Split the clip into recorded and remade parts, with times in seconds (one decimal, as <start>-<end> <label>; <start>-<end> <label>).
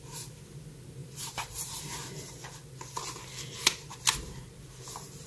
0.0-1.0 recorded; 1.0-1.8 remade; 1.8-5.3 recorded